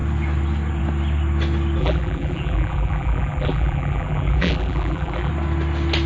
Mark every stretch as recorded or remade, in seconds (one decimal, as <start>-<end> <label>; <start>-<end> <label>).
0.0-1.8 recorded; 1.8-5.3 remade; 5.3-6.1 recorded